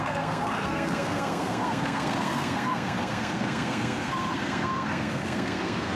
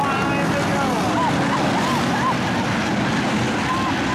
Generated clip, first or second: first